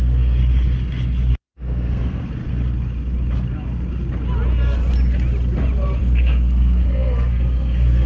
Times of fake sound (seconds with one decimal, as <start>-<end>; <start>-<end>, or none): 0.0-0.4; 1.3-2.2; 6.0-8.1